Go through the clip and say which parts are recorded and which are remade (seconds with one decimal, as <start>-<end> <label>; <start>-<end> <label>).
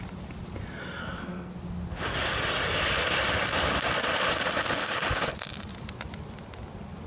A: 0.0-1.0 recorded; 1.0-1.5 remade; 1.5-7.1 recorded